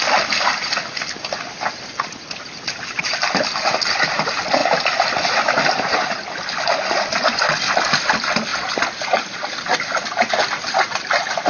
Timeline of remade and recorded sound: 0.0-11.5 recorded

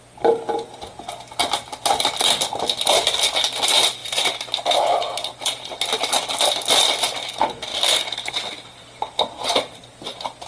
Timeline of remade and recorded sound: 0.0-10.5 recorded

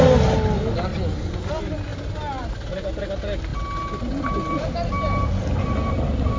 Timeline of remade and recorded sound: 0.0-6.4 recorded